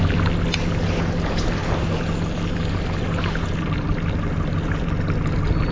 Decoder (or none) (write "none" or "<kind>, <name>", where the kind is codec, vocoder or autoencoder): none